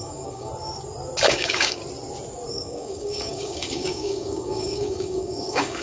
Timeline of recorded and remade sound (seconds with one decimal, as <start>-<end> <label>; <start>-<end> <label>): 0.0-0.5 remade; 0.5-1.3 recorded; 1.3-1.8 remade; 1.8-2.5 recorded; 2.5-5.8 remade